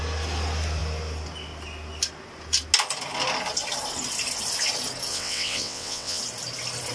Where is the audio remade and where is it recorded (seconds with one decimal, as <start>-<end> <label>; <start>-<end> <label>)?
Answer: 0.0-5.1 recorded; 5.1-6.2 remade; 6.2-6.9 recorded